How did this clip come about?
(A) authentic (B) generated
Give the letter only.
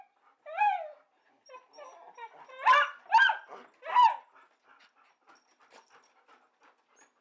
A